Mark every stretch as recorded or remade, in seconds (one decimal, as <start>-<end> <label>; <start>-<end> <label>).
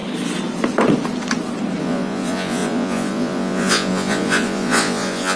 0.0-1.8 recorded; 1.8-5.4 remade